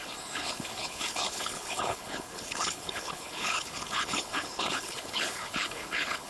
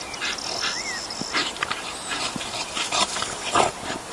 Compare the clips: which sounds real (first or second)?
second